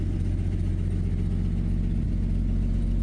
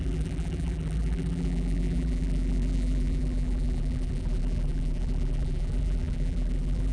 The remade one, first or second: second